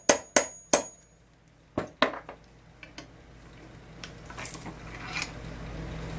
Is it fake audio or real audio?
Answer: real